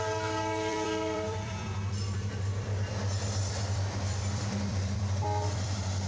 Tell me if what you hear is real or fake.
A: fake